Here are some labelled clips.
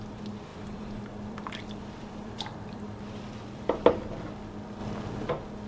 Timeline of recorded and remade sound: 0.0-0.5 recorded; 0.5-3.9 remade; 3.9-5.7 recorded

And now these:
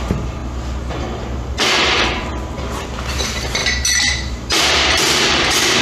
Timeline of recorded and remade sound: 0.0-0.4 remade; 0.4-1.7 recorded; 1.7-2.3 remade; 2.3-2.8 recorded; 2.8-5.8 remade

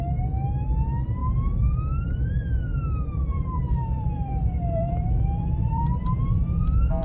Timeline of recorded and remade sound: 0.0-2.7 recorded; 2.7-7.0 remade

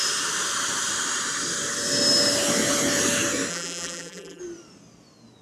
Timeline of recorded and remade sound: 0.0-3.5 recorded; 3.5-4.4 remade; 4.4-5.4 recorded